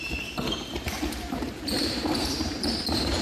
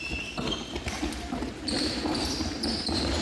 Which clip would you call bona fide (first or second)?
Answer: second